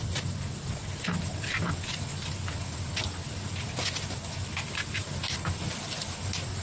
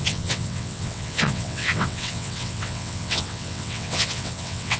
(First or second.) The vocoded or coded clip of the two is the second